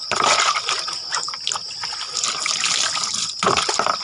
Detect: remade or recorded recorded